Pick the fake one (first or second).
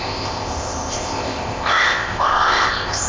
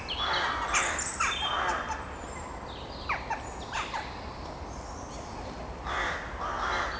first